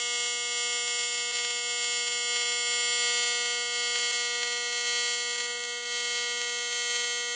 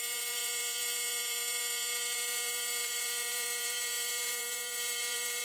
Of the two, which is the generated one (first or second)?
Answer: second